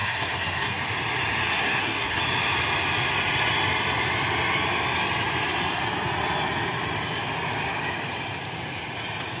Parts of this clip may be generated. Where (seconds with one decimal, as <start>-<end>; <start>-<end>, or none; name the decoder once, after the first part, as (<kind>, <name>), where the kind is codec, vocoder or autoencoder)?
0.0-0.8 (codec, SNAC); 1.5-2.2